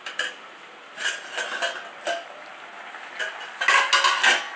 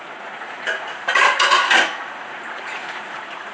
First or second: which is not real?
second